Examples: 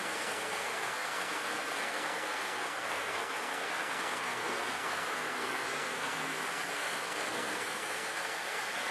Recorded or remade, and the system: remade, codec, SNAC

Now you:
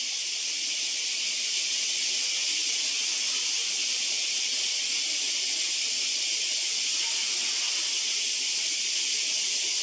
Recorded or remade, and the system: recorded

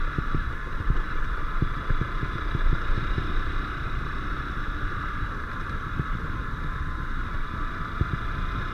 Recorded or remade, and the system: remade, vocoder, BigVGAN v2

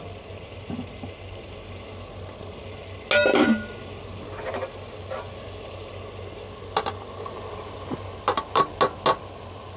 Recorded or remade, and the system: recorded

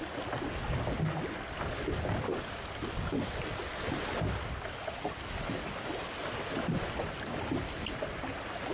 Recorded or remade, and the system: recorded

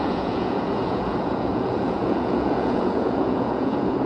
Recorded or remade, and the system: remade, vocoder, Vocos